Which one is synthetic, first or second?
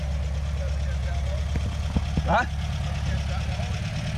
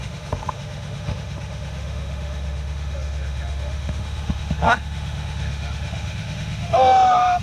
second